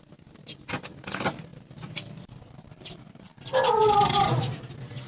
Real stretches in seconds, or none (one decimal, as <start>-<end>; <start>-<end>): 0.0-5.1